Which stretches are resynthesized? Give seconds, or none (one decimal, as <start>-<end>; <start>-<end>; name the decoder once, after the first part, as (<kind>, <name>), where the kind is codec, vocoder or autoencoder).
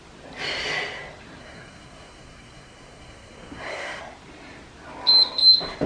1.4-4.0 (codec, SNAC)